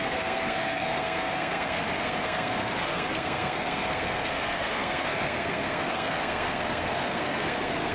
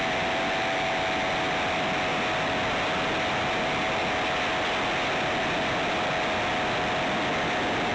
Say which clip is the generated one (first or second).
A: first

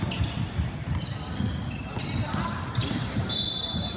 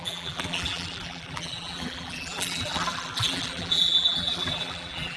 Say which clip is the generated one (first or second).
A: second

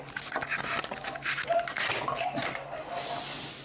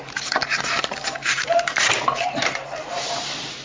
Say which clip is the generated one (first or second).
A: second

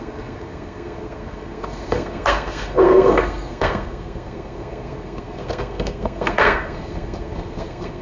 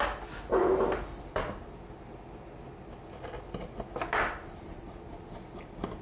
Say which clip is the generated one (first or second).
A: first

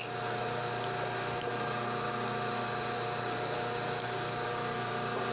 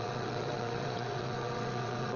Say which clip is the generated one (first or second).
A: second